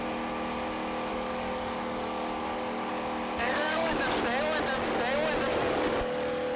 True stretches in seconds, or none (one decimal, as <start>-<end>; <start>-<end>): 0.0-1.1; 2.9-3.4; 4.0-5.5